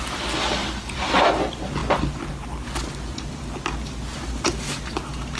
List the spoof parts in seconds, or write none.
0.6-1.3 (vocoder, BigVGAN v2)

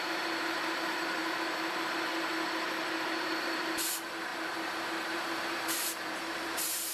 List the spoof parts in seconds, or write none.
0.0-2.3 (vocoder, BigVGAN v2); 3.4-6.9

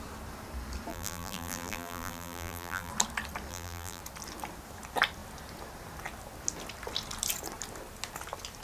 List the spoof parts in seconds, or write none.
0.9-2.9 (vocoder, BigVGAN v2); 3.5-4.0

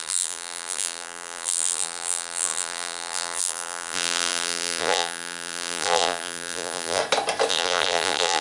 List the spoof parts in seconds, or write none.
0.0-7.0 (vocoder, BigVGAN v2); 7.5-8.4

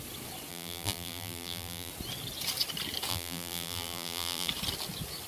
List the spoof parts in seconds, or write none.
0.5-1.9 (vocoder, BigVGAN v2); 3.1-4.5

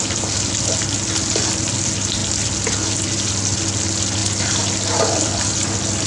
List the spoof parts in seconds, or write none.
4.2-5.3 (vocoder, BigVGAN v2)